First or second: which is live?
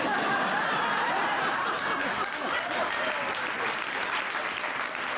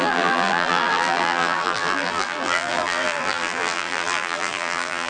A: first